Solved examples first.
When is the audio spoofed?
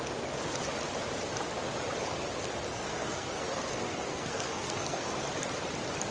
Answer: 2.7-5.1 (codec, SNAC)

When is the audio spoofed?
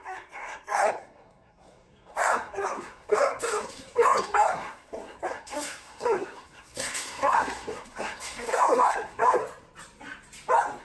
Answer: 0.0-9.4 (codec, SNAC)